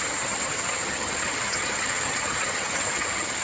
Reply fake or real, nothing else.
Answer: fake